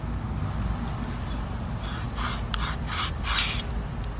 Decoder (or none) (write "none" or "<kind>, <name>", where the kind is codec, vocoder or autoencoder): none